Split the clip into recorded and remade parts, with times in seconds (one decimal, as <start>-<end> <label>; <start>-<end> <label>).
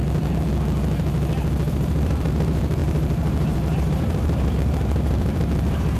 0.0-1.7 recorded; 1.7-6.0 remade